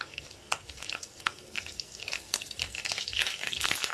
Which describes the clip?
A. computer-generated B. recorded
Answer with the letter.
A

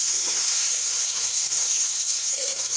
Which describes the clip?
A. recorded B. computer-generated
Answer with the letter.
B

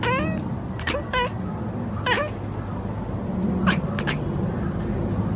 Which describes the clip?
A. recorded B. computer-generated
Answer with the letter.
A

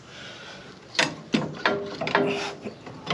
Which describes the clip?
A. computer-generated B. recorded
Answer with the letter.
B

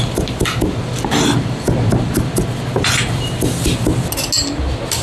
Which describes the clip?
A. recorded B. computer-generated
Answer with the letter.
A